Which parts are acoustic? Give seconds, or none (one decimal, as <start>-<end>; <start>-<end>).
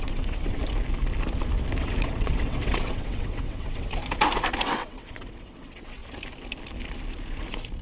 0.6-1.8; 4.0-4.6; 6.0-7.8